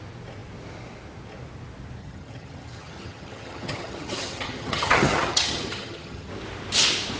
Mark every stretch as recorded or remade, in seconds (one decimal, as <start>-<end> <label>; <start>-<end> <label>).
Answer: 0.0-2.0 recorded; 2.0-6.3 remade; 6.3-7.2 recorded